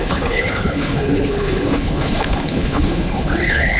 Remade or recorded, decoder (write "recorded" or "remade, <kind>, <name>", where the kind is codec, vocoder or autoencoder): remade, codec, HILCodec